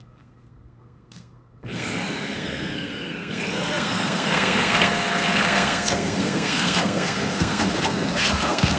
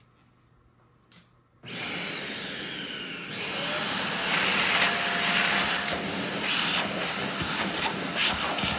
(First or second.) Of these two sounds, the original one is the second